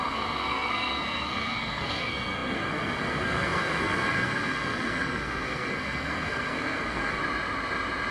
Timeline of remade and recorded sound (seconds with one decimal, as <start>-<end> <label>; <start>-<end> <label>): 0.0-7.2 remade; 7.2-8.1 recorded